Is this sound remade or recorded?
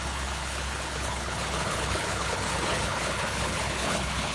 remade